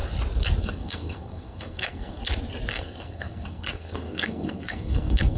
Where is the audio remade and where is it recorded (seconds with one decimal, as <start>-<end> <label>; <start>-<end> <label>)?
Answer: 0.0-0.6 recorded; 0.6-2.2 remade; 2.2-2.7 recorded; 2.7-5.4 remade